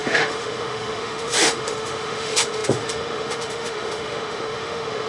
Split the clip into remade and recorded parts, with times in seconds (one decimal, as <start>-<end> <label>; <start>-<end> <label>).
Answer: 0.0-5.1 remade